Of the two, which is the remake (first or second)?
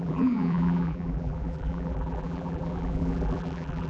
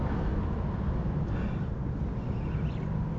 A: first